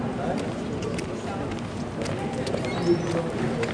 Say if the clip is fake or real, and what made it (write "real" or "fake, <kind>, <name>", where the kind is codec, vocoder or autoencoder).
real